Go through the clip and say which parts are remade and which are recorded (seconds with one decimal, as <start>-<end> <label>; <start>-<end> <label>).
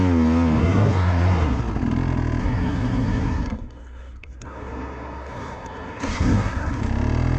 0.0-0.6 recorded; 0.6-1.6 remade; 1.6-2.4 recorded; 2.4-6.8 remade; 6.8-7.4 recorded